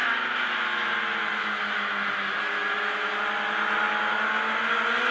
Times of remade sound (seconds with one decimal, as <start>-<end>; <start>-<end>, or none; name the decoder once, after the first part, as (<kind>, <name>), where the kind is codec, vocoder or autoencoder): 0.0-0.9 (autoencoder, DAC-VAE); 1.4-3.2